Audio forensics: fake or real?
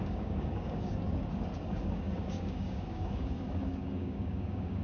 fake